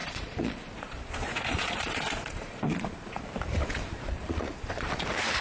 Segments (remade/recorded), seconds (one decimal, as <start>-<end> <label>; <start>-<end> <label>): 0.0-3.2 remade; 3.2-3.6 recorded; 3.6-5.0 remade; 5.0-5.4 recorded